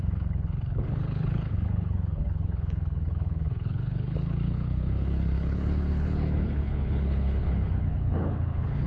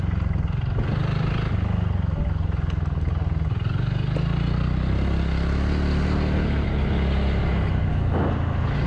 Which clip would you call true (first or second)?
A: second